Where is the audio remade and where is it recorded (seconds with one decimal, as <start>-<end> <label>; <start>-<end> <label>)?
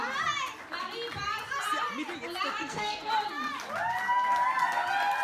0.0-2.6 recorded; 2.6-3.1 remade; 3.1-5.2 recorded